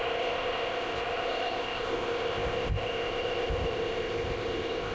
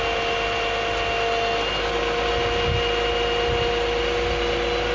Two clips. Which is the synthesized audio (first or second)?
first